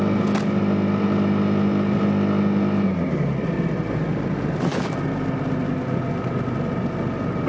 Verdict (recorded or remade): recorded